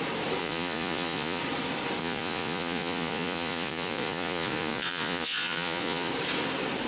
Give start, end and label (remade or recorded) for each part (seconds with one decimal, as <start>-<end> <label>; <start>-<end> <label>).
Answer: 0.0-0.4 recorded; 0.4-1.4 remade; 1.4-2.0 recorded; 2.0-6.1 remade; 6.1-6.9 recorded